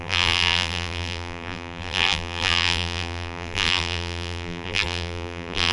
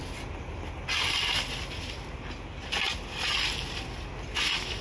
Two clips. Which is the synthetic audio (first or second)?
first